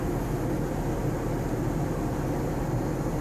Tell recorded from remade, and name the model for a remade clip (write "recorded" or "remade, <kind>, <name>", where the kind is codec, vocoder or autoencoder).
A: recorded